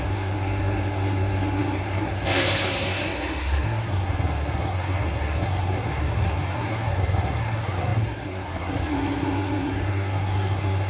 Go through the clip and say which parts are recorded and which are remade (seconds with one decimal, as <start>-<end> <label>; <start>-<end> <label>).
0.0-10.9 remade